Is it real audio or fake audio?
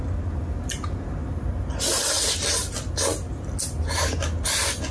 real